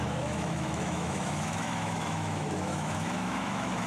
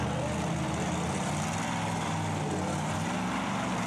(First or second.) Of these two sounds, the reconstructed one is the first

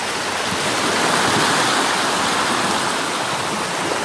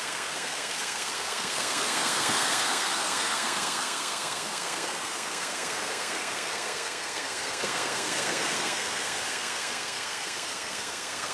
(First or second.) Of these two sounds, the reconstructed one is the second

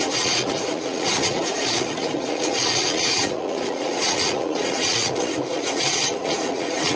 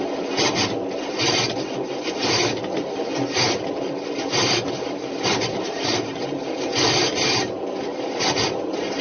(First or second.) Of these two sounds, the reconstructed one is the first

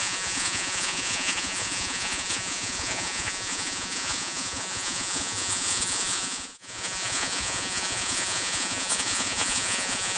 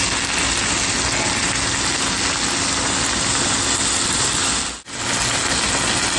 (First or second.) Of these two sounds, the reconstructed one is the first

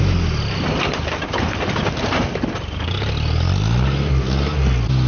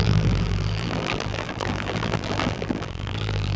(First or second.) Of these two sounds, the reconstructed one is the second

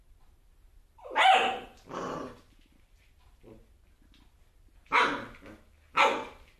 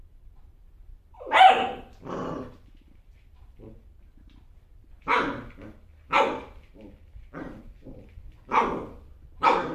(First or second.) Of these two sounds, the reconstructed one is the second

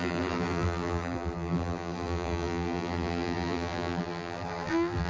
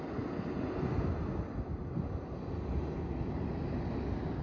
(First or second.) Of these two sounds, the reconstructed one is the first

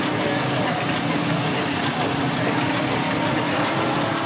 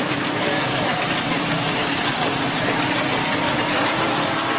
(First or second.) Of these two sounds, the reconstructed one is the second